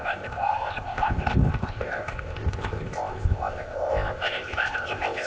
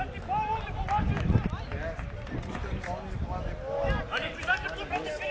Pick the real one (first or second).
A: second